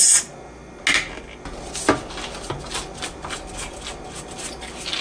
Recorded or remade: recorded